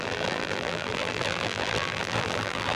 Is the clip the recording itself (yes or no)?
no